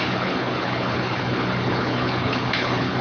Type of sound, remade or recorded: remade